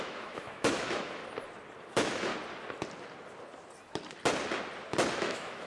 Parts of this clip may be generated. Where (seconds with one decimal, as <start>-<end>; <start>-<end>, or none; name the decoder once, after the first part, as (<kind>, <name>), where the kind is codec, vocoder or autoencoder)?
0.0-1.2 (autoencoder, DAC-VAE); 1.8-2.3; 5.2-5.7